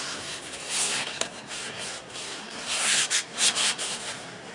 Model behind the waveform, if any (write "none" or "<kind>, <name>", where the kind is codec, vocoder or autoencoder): codec, SNAC